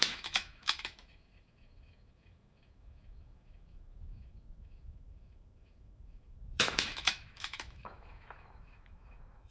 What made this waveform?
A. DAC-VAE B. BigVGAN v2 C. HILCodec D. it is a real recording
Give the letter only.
A